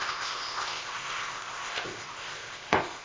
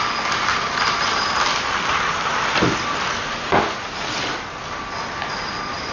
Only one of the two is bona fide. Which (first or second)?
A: second